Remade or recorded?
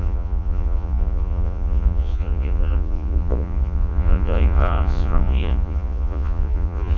remade